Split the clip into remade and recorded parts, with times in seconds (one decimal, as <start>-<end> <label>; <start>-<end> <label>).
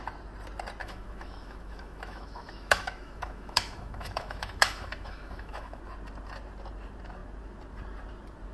0.0-0.8 recorded; 0.8-5.8 remade; 5.8-8.5 recorded